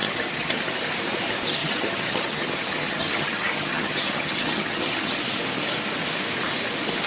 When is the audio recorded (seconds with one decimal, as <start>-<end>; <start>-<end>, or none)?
0.6-1.6; 5.1-7.1